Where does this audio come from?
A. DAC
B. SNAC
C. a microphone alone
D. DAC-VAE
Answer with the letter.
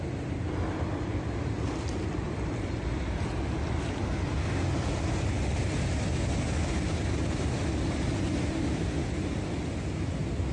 C